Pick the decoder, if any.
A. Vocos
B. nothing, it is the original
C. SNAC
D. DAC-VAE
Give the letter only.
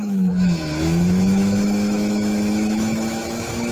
D